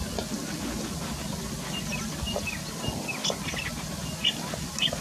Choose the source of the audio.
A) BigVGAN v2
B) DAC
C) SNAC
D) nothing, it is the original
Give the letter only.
D